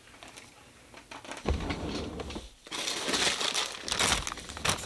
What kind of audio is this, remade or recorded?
recorded